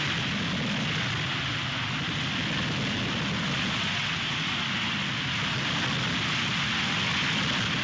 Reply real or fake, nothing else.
real